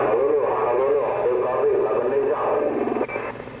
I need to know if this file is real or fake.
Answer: real